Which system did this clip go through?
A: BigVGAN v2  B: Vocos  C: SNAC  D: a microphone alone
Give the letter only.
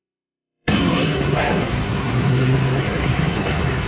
C